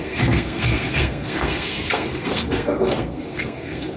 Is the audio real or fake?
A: fake